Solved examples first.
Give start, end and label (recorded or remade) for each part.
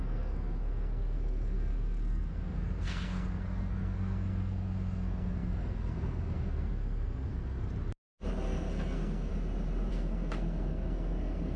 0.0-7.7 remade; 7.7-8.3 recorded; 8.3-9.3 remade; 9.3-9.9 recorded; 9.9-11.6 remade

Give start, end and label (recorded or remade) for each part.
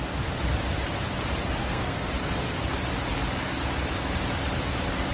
0.0-1.6 recorded; 1.6-2.1 remade; 2.1-5.1 recorded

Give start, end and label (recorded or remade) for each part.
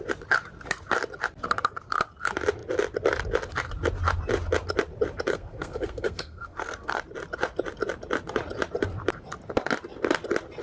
0.0-5.3 recorded; 5.3-7.0 remade; 7.0-10.6 recorded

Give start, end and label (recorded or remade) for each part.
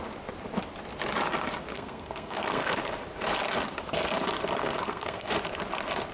0.0-1.7 recorded; 1.7-2.8 remade; 2.8-4.6 recorded; 4.6-5.3 remade; 5.3-6.1 recorded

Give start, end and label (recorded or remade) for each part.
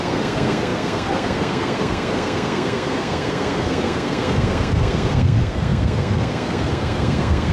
0.0-7.5 remade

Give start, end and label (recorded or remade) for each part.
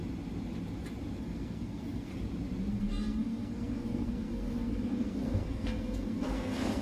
0.0-1.2 recorded; 1.2-2.1 remade; 2.1-2.7 recorded; 2.7-6.8 remade